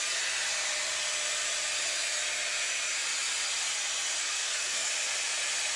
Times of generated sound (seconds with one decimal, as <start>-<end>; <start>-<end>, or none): 4.2-4.9